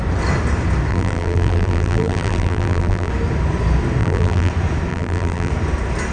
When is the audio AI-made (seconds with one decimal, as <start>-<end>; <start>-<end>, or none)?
0.9-3.1; 4.0-4.5; 4.9-5.5